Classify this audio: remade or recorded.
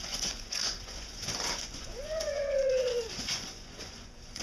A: remade